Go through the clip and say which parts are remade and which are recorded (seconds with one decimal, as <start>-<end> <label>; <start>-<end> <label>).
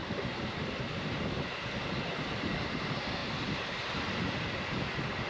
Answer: 0.0-5.3 recorded